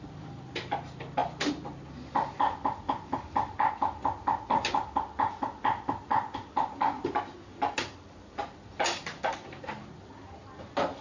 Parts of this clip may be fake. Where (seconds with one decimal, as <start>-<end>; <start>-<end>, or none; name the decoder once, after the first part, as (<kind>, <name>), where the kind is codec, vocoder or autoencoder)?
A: none